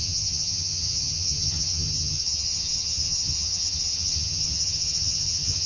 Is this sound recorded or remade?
remade